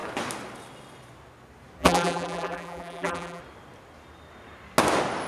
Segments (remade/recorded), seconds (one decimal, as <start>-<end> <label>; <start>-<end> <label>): 0.0-1.8 recorded; 1.8-3.4 remade; 3.4-5.3 recorded